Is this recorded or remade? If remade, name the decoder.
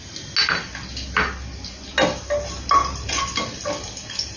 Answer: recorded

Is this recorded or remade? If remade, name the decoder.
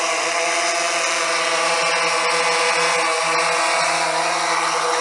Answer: recorded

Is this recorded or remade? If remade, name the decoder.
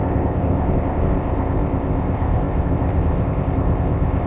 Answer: remade, codec, ZipCodec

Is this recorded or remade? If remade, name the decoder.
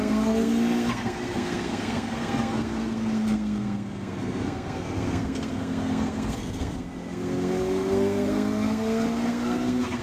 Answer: remade, codec, SNAC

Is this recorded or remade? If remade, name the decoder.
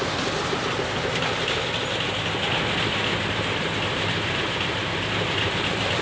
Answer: recorded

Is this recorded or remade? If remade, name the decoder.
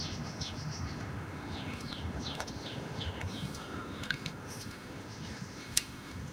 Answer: remade, autoencoder, DAC-VAE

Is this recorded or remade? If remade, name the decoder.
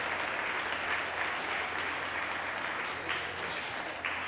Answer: recorded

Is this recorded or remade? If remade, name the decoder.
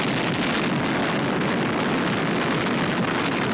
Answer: recorded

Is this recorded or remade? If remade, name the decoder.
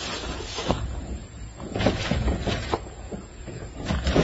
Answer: remade, vocoder, Vocos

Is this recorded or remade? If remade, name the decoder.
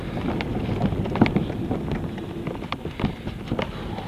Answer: recorded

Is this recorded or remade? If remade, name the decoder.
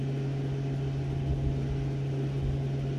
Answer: recorded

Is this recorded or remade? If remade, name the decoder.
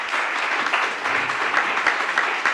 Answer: recorded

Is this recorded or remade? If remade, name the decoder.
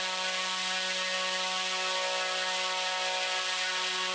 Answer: recorded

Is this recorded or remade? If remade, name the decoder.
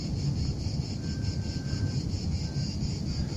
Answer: recorded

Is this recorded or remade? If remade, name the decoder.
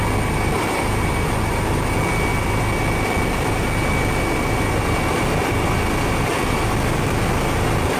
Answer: recorded